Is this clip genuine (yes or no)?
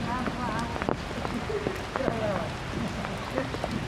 yes